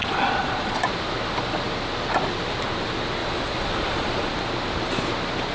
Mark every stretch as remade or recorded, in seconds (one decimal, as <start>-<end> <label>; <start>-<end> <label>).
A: 0.0-0.8 remade; 0.8-3.2 recorded; 3.2-4.3 remade; 4.3-5.5 recorded

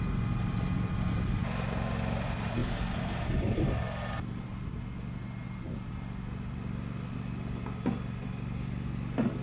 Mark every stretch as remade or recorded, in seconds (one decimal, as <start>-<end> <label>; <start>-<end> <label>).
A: 0.0-9.4 recorded

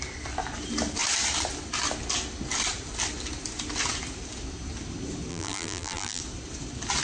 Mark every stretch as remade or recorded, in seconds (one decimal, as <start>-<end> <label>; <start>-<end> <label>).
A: 0.0-5.3 recorded; 5.3-6.2 remade; 6.2-7.0 recorded

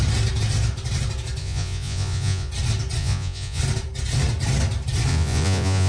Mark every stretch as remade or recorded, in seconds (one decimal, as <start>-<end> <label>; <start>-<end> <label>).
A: 0.0-1.4 recorded; 1.4-2.5 remade; 2.5-3.0 recorded; 3.0-3.6 remade; 3.6-5.1 recorded; 5.1-5.9 remade

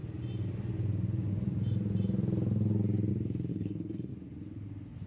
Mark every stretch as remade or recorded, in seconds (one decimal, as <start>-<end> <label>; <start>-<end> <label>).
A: 0.0-3.5 recorded; 3.5-4.1 remade; 4.1-5.1 recorded

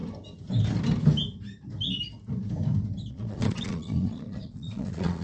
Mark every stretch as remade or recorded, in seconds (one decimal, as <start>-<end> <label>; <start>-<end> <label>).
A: 0.0-3.1 recorded; 3.1-5.2 remade

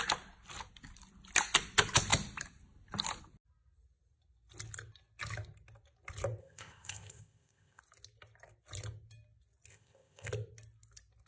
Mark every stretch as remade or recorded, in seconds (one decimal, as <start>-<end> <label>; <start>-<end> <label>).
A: 0.0-6.4 recorded; 6.4-7.8 remade; 7.8-9.7 recorded; 9.7-10.3 remade; 10.3-11.3 recorded

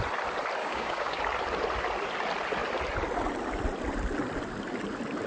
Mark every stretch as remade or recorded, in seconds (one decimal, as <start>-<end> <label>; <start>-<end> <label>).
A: 0.0-0.6 recorded; 0.6-1.2 remade; 1.2-5.3 recorded